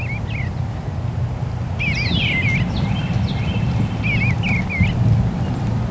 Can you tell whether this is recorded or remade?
recorded